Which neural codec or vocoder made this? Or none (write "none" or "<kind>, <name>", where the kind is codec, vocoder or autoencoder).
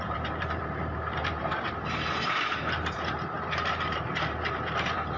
vocoder, BigVGAN v2